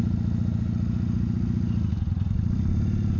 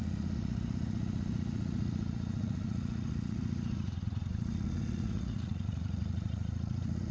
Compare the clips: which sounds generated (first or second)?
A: second